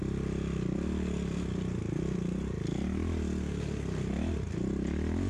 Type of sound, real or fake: real